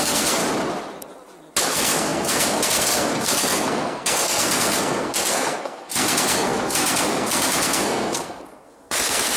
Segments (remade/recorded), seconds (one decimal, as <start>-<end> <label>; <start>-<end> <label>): 0.0-0.4 remade; 0.4-1.6 recorded; 1.6-9.4 remade